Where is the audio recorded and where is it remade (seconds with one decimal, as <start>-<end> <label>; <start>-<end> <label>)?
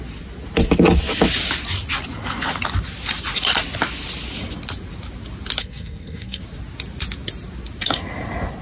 0.0-5.6 recorded; 5.6-6.4 remade; 6.4-8.6 recorded